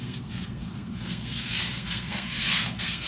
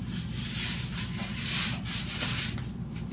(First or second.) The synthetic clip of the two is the first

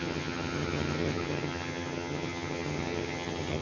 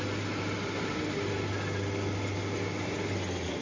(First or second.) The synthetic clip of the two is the first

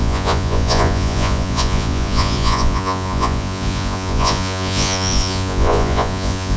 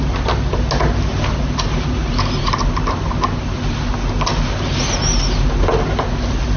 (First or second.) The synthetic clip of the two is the first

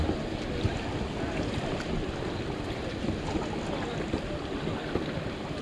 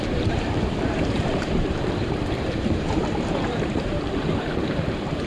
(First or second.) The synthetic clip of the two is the second